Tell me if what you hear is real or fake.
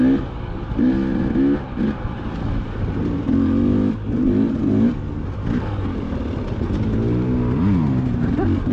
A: real